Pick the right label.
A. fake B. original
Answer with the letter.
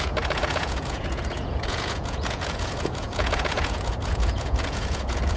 A